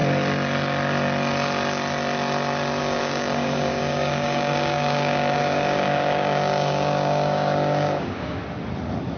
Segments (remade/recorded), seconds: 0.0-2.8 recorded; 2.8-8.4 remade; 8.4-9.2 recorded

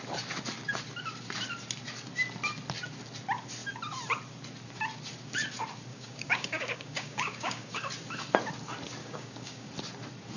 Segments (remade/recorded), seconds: 0.0-5.9 recorded; 5.9-7.9 remade; 7.9-9.0 recorded; 9.0-9.7 remade; 9.7-10.4 recorded